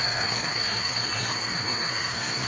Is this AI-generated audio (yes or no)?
yes